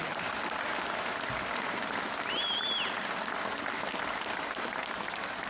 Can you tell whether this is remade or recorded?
recorded